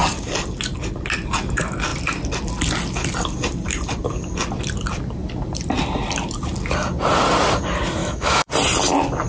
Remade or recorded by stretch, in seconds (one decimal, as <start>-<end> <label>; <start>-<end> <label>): 0.0-8.0 recorded; 8.0-8.5 remade; 8.5-9.3 recorded